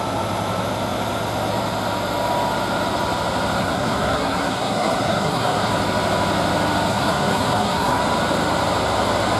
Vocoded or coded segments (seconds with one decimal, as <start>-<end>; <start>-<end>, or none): 3.6-5.7; 6.9-8.0

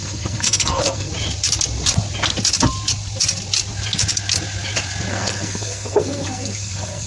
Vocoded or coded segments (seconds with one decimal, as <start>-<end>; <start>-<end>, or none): 0.0-1.1; 5.1-7.1